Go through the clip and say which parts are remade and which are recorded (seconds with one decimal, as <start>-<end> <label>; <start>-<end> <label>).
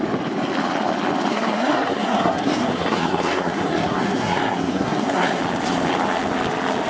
0.0-1.3 recorded; 1.3-5.4 remade; 5.4-6.9 recorded